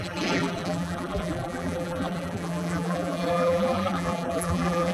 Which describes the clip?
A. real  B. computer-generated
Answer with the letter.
B